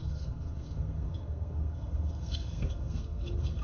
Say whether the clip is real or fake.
fake